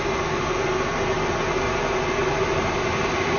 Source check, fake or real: real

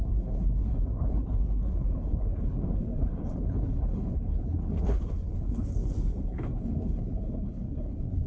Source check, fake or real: fake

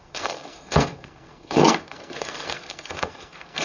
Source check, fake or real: fake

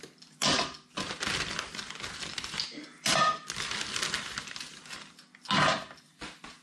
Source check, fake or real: real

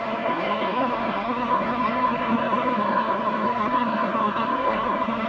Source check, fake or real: fake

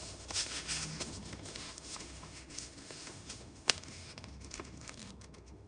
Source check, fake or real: fake